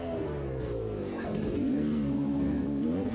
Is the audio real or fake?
fake